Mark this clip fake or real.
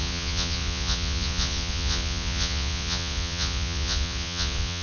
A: fake